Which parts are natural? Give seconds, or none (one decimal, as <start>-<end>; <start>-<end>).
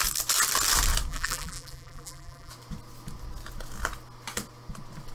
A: 0.0-1.1; 2.5-5.1